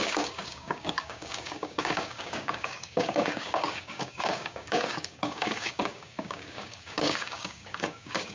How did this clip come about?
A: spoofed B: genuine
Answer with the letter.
A